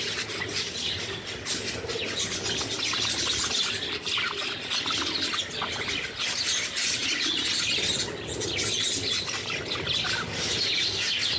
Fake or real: real